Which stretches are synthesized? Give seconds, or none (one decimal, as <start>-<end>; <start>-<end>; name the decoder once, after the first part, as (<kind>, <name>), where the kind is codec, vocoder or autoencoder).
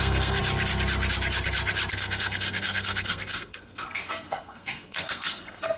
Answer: 0.0-0.4 (codec, SNAC); 1.9-5.8